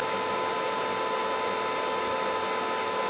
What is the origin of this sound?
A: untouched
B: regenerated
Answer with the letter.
A